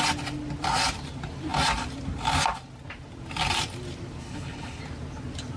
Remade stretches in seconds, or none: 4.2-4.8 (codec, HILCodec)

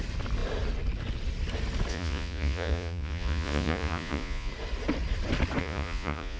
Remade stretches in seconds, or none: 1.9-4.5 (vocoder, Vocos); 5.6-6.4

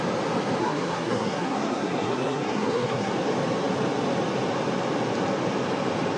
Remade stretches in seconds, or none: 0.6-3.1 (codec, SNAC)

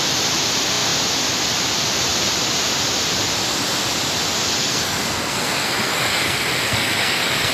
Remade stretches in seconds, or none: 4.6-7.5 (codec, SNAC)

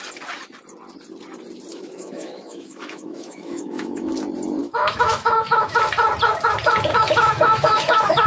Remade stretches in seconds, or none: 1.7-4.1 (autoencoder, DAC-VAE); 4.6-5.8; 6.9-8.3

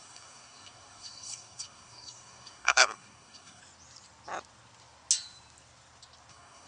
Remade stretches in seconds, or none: 0.0-3.6 (codec, SNAC); 6.3-6.7